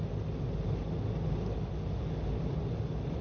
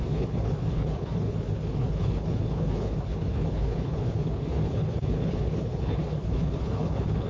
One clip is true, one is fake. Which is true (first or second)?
first